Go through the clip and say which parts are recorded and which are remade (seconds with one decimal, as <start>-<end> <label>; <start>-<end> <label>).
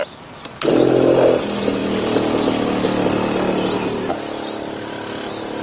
0.0-5.6 recorded